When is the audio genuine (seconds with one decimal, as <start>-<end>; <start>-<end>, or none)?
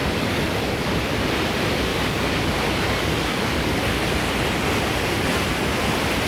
0.9-1.9; 3.7-6.3